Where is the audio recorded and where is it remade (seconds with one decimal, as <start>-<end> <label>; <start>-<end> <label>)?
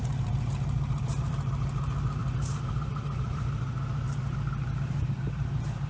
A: 0.0-5.9 remade